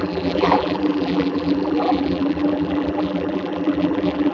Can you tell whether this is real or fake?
fake